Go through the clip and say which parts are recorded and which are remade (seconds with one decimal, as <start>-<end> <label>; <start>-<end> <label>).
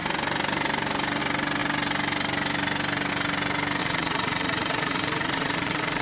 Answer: 0.0-3.8 recorded; 3.8-6.0 remade